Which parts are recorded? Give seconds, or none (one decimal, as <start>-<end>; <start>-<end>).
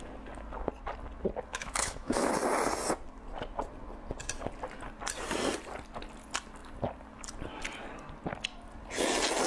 0.0-1.5; 2.3-9.5